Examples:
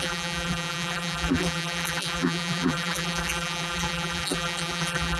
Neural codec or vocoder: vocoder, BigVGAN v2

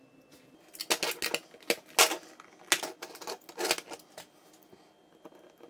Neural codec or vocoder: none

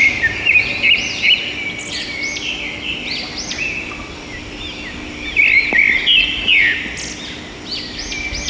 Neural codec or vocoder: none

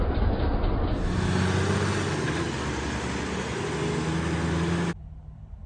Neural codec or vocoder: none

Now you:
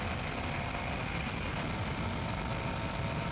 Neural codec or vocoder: none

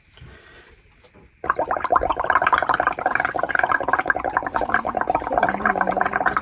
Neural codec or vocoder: vocoder, BigVGAN v2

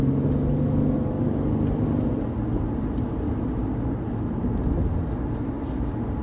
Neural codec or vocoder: none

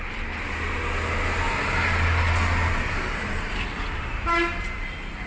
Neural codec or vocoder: none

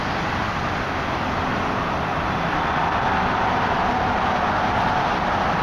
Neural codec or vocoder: none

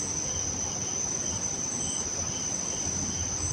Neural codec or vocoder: vocoder, BigVGAN v2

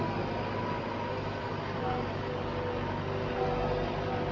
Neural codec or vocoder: none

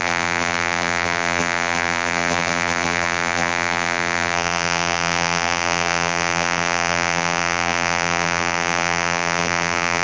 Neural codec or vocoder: vocoder, BigVGAN v2